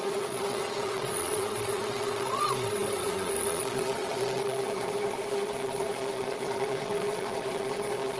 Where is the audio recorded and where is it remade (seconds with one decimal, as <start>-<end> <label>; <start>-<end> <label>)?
0.0-8.2 remade